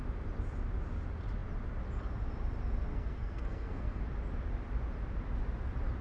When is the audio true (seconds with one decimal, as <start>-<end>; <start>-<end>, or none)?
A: 0.0-2.9; 4.0-6.0